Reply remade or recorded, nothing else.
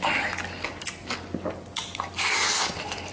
recorded